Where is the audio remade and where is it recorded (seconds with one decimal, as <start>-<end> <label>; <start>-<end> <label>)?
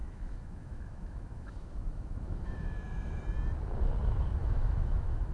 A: 0.0-3.2 remade; 3.2-4.4 recorded; 4.4-5.3 remade